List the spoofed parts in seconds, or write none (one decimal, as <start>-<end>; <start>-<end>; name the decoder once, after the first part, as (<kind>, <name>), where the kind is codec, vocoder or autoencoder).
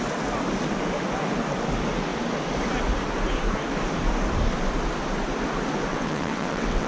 5.9-6.9 (vocoder, WaveNeXt)